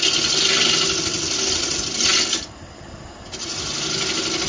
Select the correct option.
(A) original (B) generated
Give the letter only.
A